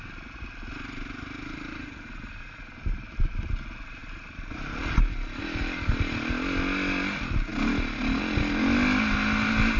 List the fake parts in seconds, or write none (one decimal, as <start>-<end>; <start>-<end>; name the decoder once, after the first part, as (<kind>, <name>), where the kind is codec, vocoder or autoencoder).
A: none